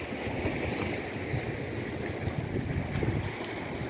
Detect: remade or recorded recorded